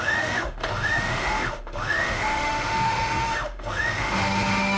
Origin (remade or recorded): remade